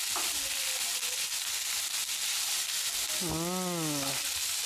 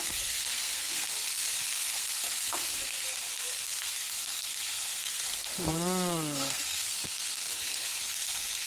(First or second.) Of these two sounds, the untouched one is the first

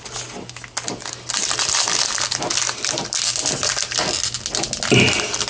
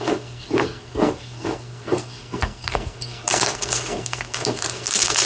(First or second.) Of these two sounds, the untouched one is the first